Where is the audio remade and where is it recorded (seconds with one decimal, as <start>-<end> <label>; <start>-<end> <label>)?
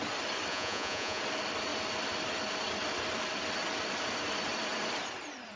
0.0-0.5 recorded; 0.5-1.2 remade; 1.2-5.6 recorded